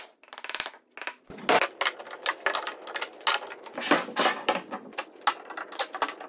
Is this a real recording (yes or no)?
yes